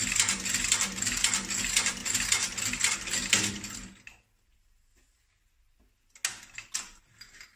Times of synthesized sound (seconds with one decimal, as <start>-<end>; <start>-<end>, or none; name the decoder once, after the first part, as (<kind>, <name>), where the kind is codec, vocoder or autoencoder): none